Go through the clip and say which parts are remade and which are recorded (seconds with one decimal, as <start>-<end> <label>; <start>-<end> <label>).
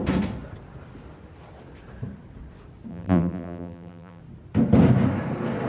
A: 0.0-2.9 recorded; 2.9-4.2 remade; 4.2-5.7 recorded